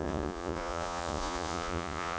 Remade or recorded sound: remade